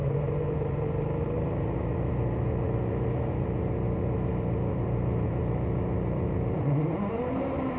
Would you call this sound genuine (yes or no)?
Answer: no